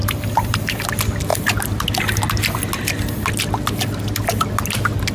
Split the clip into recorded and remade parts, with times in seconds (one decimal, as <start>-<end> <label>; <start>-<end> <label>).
0.0-0.9 remade; 0.9-5.1 recorded